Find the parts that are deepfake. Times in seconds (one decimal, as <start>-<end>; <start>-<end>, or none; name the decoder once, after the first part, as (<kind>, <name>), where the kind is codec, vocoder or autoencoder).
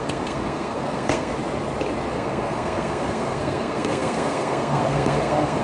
0.0-1.3 (codec, SNAC); 2.1-5.6